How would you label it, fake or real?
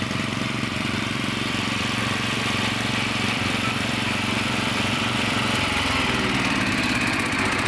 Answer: fake